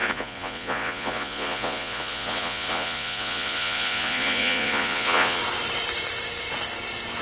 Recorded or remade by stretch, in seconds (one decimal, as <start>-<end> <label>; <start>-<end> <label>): 0.0-5.4 remade; 5.4-7.2 recorded